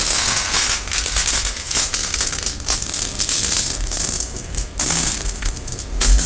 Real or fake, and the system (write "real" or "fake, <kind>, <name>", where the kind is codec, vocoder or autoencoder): fake, codec, SNAC